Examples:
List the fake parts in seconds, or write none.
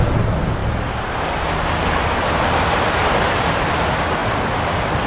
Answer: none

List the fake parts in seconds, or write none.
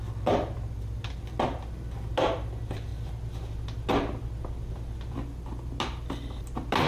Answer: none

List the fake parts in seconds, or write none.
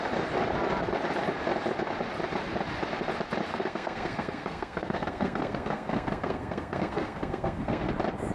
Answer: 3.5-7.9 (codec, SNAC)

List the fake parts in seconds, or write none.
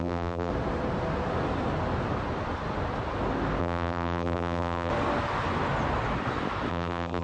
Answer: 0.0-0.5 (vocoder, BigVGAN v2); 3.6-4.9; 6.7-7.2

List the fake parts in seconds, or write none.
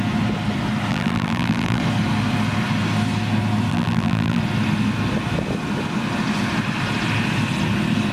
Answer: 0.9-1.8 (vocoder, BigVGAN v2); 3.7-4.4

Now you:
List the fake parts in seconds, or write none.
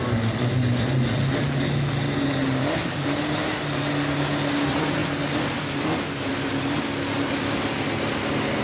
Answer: none